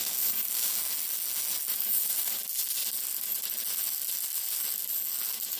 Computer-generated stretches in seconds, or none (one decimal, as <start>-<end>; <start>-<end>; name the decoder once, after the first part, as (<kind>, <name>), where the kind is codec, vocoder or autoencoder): 0.0-0.8 (codec, DAC); 1.7-2.4